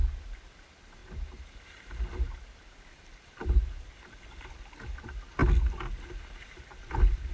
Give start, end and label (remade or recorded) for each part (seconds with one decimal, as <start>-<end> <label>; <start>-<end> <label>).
0.0-1.0 recorded; 1.0-4.5 remade; 4.5-7.3 recorded